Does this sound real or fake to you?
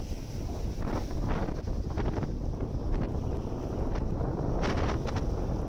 real